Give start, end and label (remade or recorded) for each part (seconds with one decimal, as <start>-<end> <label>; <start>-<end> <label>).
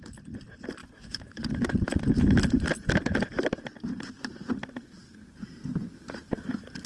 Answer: 0.0-0.8 recorded; 0.8-1.4 remade; 1.4-6.9 recorded